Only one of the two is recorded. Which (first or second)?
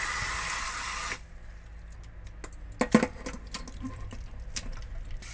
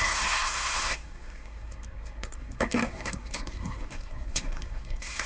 first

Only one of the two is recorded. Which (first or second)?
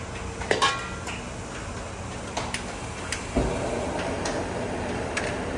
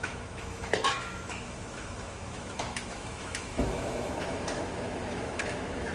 first